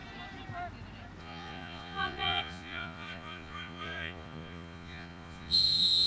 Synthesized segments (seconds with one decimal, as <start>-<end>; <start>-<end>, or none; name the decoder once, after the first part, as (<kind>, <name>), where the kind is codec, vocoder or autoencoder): 1.2-6.1 (vocoder, Vocos)